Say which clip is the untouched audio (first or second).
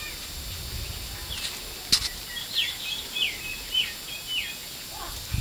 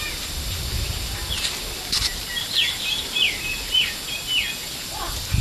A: first